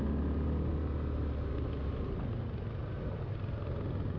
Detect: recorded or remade recorded